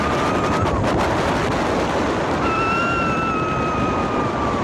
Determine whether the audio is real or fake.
fake